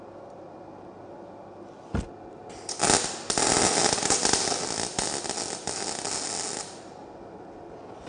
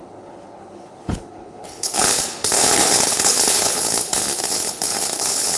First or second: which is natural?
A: first